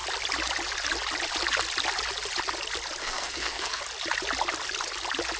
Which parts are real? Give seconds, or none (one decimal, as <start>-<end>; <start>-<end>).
0.0-3.0; 3.8-5.4